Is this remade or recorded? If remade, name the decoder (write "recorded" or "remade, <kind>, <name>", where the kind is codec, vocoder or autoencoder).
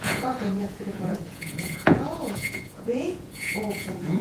remade, vocoder, Vocos